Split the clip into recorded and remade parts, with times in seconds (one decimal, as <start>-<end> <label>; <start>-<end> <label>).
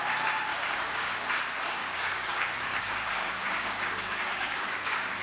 0.0-0.5 recorded; 0.5-1.2 remade; 1.2-1.8 recorded; 1.8-5.2 remade